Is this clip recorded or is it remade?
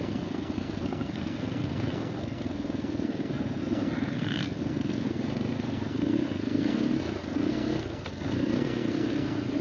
remade